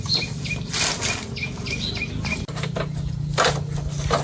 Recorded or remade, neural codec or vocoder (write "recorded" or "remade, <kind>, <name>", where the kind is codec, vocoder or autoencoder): recorded